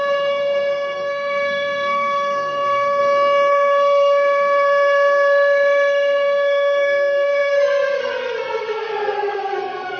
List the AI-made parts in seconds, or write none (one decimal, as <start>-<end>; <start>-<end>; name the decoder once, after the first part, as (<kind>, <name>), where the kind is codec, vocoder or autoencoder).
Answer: 0.0-3.0 (codec, SNAC); 3.5-10.0